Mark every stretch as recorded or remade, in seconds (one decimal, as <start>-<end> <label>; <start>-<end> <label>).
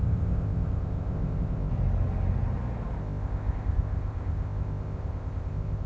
0.0-1.7 remade; 1.7-3.0 recorded; 3.0-5.9 remade